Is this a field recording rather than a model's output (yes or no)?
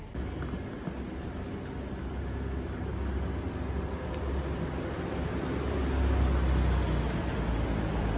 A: yes